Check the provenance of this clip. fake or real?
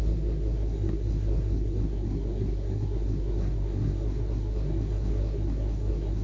fake